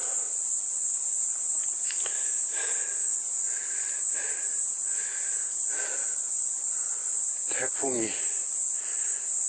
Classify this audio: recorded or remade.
recorded